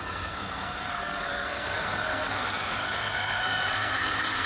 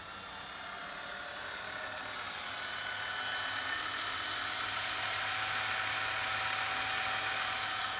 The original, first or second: second